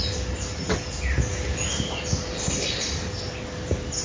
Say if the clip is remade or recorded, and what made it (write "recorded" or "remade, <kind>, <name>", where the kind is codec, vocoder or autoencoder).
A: recorded